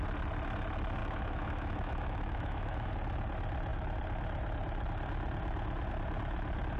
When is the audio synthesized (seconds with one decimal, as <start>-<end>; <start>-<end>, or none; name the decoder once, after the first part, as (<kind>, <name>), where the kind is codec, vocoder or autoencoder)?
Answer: 1.0-2.9 (autoencoder, DAC-VAE)